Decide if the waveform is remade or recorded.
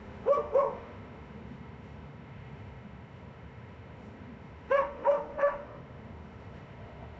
remade